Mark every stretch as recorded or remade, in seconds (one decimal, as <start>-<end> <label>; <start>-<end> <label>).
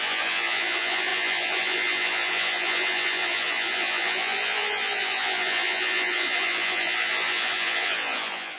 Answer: 0.0-8.6 remade